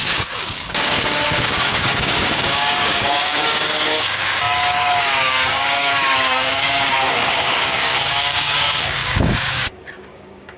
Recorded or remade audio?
remade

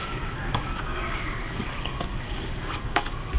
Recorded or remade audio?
remade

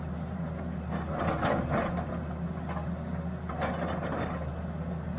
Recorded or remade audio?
recorded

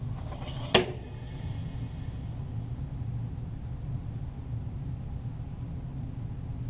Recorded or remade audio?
recorded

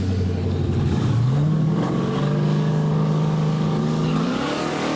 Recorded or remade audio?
remade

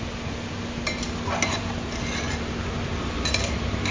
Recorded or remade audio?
recorded